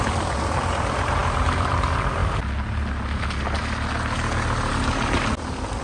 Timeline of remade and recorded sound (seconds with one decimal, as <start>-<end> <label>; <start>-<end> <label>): 0.0-5.8 recorded